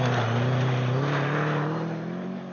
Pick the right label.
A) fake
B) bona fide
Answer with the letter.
B